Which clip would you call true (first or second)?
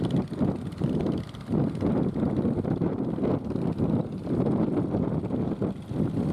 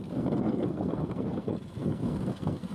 first